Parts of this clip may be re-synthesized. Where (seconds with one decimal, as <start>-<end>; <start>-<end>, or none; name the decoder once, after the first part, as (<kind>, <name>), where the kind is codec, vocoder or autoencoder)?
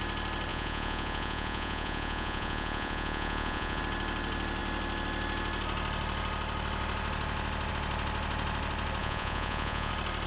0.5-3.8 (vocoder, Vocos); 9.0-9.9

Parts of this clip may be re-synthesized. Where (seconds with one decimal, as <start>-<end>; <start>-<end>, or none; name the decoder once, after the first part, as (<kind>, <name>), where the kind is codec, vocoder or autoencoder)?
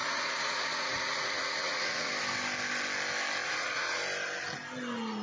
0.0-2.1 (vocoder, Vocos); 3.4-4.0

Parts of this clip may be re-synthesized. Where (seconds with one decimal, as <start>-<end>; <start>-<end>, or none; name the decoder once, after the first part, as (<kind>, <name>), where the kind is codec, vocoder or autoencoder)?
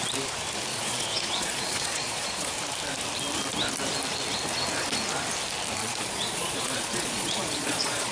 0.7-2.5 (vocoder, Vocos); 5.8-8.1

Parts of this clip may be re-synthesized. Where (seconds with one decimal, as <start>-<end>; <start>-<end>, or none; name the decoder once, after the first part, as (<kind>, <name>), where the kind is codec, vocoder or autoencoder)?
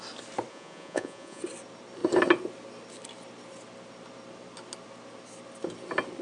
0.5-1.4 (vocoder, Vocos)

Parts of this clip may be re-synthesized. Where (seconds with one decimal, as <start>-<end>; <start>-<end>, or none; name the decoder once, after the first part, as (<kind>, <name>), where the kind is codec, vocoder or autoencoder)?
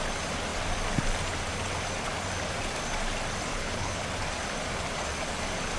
3.5-4.0 (codec, HILCodec)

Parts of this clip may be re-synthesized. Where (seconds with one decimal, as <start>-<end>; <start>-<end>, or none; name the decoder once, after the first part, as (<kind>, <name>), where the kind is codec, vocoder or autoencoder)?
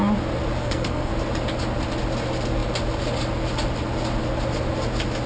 0.6-1.1 (codec, SNAC)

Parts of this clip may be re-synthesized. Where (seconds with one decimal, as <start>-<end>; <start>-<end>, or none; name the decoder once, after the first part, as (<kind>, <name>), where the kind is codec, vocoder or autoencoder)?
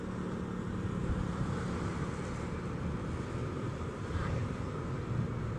1.0-2.2 (vocoder, BigVGAN v2); 3.4-5.0